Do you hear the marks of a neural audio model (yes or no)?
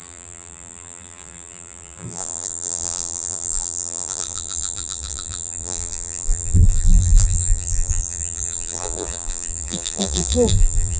yes